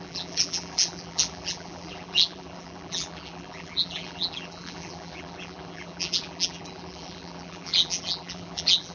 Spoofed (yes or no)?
yes